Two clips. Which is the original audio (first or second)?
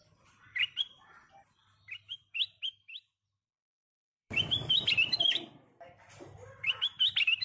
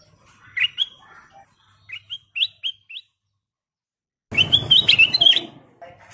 second